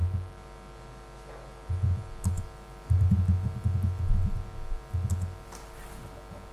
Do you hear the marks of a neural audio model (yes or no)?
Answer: no